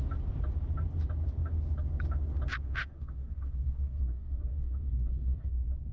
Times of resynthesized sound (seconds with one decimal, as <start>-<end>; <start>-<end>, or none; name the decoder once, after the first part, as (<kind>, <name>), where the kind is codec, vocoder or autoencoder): 2.8-5.5 (codec, DAC)

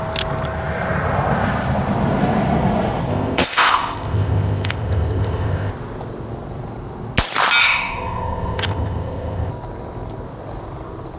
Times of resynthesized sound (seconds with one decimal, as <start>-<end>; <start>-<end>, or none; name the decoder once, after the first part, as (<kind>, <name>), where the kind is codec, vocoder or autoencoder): 3.1-5.7 (codec, ZipCodec); 7.6-9.5